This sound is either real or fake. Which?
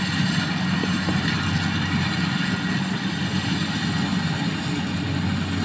real